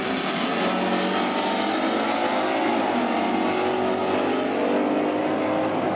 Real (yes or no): yes